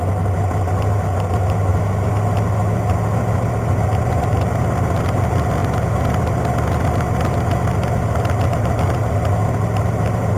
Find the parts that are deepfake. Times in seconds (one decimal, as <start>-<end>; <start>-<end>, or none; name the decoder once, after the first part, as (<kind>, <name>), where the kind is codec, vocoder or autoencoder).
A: none